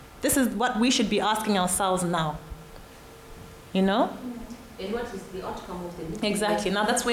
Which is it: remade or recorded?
recorded